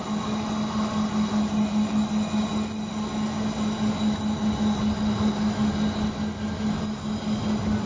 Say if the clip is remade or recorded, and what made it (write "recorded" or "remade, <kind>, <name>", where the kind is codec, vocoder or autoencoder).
recorded